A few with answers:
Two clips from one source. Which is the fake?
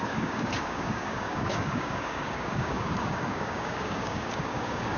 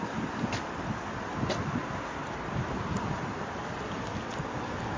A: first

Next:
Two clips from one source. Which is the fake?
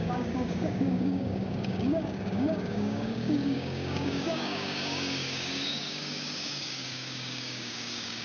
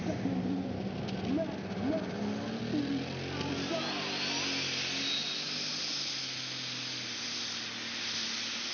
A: first